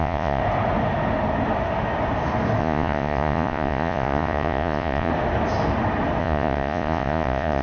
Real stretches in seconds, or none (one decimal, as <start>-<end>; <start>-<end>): 0.4-2.6; 5.1-6.2